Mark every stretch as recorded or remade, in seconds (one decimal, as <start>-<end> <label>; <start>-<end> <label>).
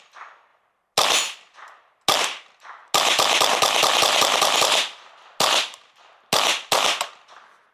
0.0-7.7 recorded